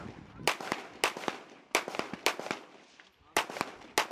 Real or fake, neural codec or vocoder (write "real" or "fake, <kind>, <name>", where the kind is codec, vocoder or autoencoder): real